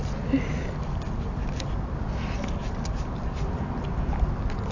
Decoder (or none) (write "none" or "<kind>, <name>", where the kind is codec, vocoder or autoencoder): none